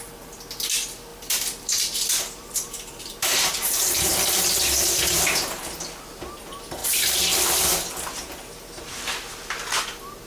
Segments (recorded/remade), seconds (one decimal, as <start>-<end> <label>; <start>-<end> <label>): 0.0-1.1 recorded; 1.1-5.0 remade; 5.0-10.3 recorded